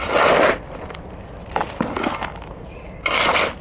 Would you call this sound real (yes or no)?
yes